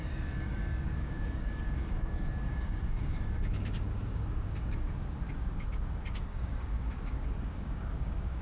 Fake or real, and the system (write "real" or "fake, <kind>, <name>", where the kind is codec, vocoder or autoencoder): fake, codec, DAC